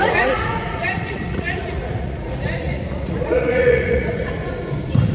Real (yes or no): no